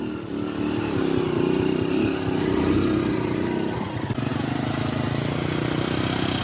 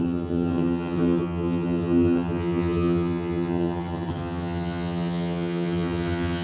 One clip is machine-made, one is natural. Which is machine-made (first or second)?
second